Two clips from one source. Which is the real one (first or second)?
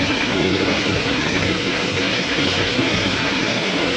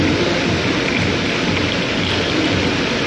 second